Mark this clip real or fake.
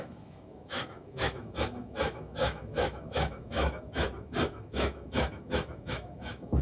fake